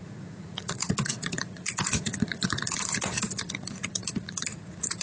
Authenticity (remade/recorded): remade